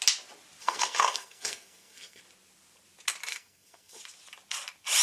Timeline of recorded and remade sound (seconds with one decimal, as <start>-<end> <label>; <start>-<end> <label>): 0.0-0.6 recorded; 0.6-2.2 remade; 2.2-3.3 recorded; 3.3-4.0 remade; 4.0-5.0 recorded